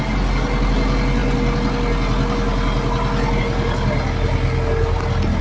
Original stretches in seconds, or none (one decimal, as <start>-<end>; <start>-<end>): 0.0-5.4

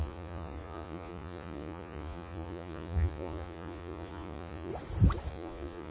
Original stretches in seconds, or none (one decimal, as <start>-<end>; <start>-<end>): 4.7-5.3